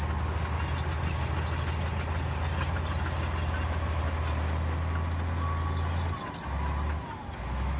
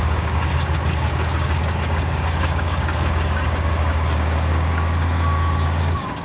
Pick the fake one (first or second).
second